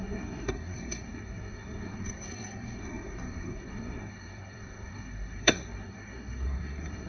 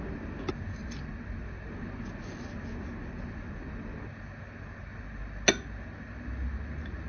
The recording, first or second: second